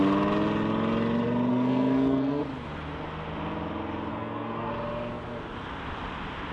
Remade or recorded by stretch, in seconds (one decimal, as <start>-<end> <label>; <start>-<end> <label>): 0.0-1.5 recorded; 1.5-2.4 remade; 2.4-4.1 recorded; 4.1-4.7 remade; 4.7-6.5 recorded